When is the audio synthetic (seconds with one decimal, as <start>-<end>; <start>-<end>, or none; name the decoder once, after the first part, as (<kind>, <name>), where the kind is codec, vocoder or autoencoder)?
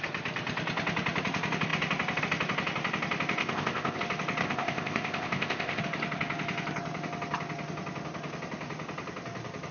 3.4-4.0 (codec, ZipCodec); 4.4-5.8